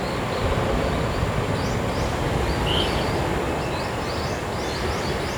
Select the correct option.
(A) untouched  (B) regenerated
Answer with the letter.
A